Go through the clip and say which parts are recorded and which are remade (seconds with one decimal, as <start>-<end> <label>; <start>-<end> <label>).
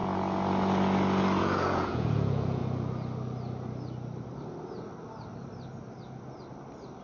0.0-1.4 recorded; 1.4-2.6 remade; 2.6-7.0 recorded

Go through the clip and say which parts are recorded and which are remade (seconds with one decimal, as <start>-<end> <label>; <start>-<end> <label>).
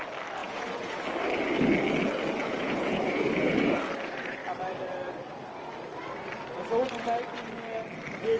0.0-0.4 recorded; 0.4-1.0 remade; 1.0-2.4 recorded; 2.4-3.8 remade; 3.8-8.4 recorded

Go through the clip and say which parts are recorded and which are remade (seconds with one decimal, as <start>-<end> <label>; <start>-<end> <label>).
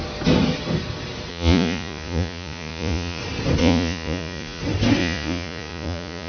0.0-1.3 recorded; 1.3-3.2 remade; 3.2-3.6 recorded; 3.6-4.6 remade; 4.6-5.0 recorded; 5.0-6.3 remade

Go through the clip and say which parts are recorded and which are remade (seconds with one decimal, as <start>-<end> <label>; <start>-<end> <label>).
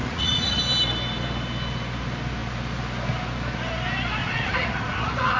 0.0-0.6 remade; 0.6-4.2 recorded; 4.2-5.4 remade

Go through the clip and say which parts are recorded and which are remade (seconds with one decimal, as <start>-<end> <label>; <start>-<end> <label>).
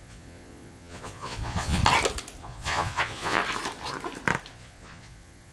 0.0-1.8 remade; 1.8-2.4 recorded; 2.4-3.4 remade; 3.4-4.5 recorded; 4.5-5.5 remade